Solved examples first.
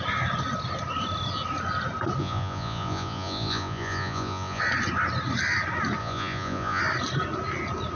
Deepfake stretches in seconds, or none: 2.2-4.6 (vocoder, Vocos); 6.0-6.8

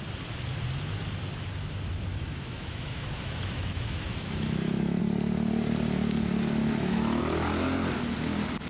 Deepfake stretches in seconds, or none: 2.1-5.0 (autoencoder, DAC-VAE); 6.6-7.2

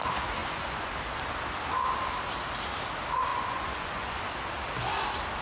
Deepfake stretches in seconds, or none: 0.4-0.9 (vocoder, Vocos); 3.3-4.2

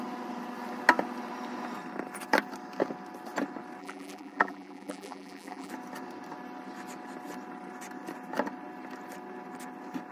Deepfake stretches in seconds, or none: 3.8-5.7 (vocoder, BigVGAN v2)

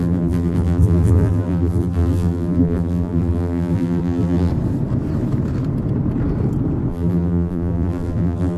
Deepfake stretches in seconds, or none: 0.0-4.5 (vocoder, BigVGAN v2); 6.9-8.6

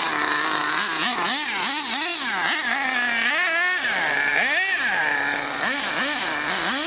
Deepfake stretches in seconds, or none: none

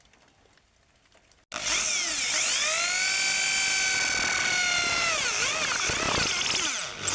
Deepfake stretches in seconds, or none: none